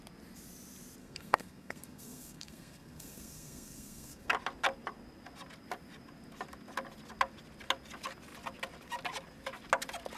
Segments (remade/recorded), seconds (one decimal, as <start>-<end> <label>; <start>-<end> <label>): 0.0-1.0 recorded; 1.0-4.3 remade; 4.3-10.2 recorded